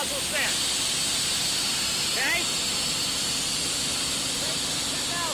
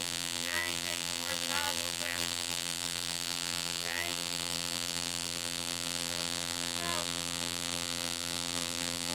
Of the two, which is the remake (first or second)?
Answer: second